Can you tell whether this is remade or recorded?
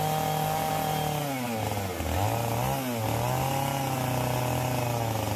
recorded